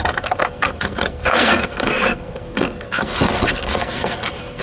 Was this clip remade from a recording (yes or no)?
yes